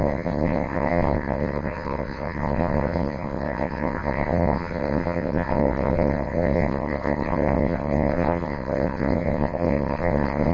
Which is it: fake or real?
fake